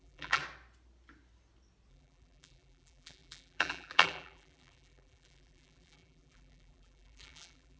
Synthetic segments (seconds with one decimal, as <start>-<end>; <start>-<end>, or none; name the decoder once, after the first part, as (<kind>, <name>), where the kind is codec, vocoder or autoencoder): 0.0-0.4 (vocoder, BigVGAN v2); 1.9-7.8